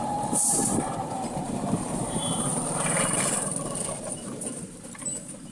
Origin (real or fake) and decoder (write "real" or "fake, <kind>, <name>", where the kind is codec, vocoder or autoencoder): fake, vocoder, BigVGAN v2